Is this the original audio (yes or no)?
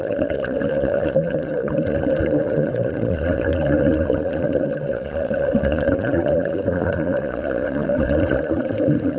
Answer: no